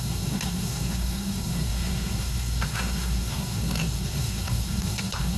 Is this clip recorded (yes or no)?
no